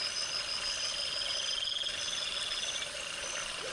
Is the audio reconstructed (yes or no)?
no